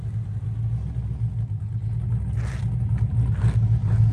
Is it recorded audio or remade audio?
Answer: recorded